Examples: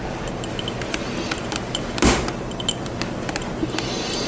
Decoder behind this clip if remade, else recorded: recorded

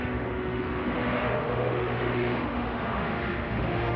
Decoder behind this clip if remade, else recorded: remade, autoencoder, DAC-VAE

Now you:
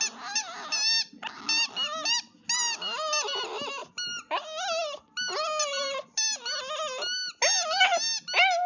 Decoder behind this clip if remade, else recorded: recorded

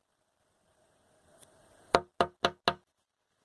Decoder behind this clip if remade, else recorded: recorded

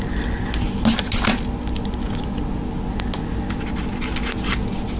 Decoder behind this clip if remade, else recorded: recorded